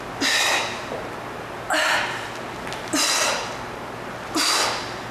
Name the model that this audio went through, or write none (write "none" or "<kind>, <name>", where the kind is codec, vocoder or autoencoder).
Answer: none